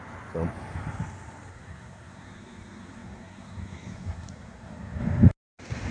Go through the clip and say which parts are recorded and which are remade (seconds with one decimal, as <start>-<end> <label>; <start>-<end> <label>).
0.0-1.5 recorded; 1.5-5.0 remade; 5.0-5.9 recorded

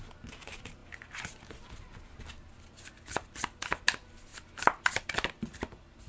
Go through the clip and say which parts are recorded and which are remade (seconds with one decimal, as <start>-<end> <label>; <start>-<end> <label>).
0.0-6.1 recorded

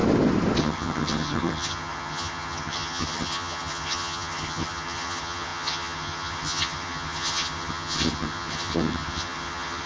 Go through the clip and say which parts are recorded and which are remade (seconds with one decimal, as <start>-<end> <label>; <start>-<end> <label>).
0.0-0.6 recorded; 0.6-9.9 remade

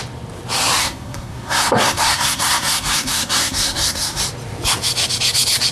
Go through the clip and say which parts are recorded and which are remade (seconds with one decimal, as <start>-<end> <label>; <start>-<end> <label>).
0.0-0.8 recorded; 0.8-4.2 remade; 4.2-5.7 recorded